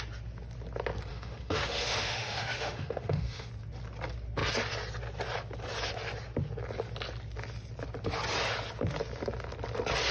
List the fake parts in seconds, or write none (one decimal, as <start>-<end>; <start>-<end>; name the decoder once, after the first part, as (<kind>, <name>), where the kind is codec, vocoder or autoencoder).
1.1-3.5 (autoencoder, DAC-VAE)